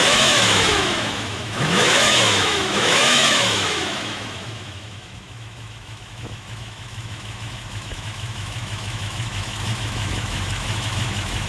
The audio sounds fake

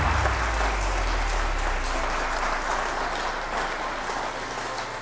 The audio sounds real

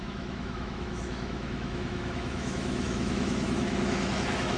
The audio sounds fake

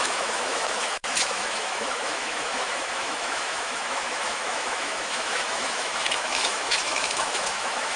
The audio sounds fake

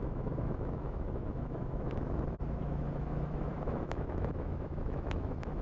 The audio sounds fake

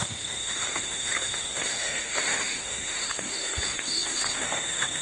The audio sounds fake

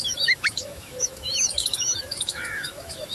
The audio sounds fake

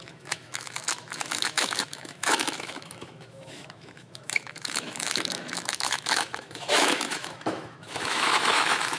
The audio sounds fake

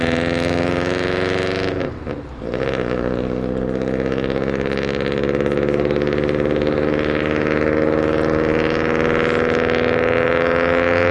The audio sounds real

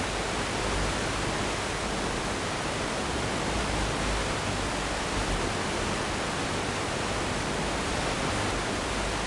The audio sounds real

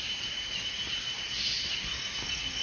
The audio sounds real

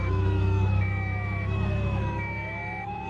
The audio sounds fake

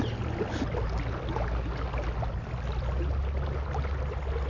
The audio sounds real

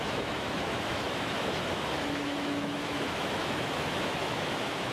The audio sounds fake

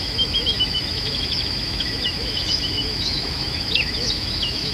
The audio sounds fake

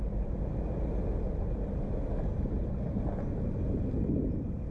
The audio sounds real